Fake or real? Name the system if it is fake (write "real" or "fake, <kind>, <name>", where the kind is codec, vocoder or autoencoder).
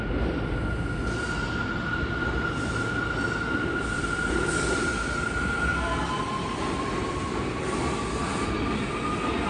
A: real